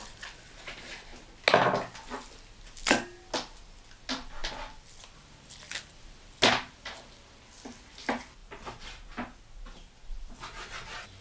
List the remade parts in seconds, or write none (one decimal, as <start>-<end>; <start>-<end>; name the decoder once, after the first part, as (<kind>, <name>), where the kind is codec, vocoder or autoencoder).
none